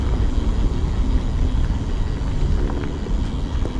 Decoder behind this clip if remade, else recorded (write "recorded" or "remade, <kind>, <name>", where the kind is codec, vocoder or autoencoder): recorded